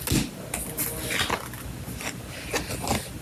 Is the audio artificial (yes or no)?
no